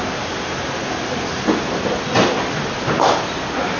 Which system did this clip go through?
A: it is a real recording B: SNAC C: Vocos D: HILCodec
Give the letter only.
A